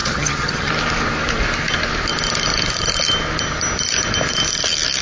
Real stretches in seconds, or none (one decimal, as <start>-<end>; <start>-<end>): 0.7-5.0